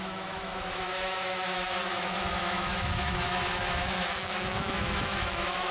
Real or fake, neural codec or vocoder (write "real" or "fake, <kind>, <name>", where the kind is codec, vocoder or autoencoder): fake, autoencoder, DAC-VAE